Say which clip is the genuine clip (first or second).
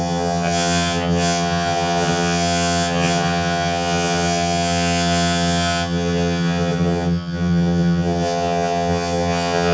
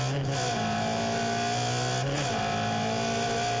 second